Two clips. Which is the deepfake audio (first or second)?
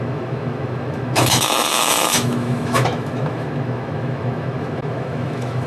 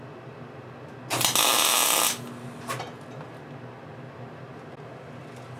first